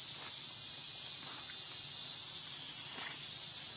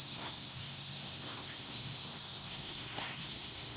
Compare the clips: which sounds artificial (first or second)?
second